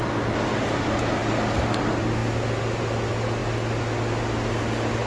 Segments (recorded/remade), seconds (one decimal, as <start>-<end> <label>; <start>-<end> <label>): 0.0-5.1 recorded